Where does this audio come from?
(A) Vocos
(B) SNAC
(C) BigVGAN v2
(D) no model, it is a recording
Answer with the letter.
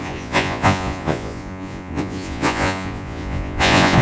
A